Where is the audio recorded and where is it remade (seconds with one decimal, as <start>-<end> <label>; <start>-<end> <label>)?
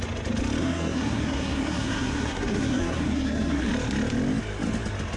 0.0-0.6 recorded; 0.6-3.7 remade; 3.7-5.2 recorded